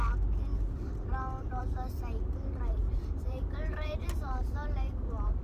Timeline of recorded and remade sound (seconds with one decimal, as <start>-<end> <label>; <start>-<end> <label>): 0.0-0.5 recorded; 0.5-1.6 remade; 1.6-2.8 recorded; 2.8-5.4 remade